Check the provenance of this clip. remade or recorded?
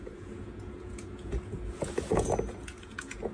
remade